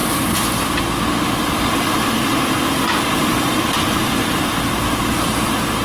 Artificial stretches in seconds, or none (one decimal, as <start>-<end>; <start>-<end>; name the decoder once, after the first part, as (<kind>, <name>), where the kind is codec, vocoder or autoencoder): none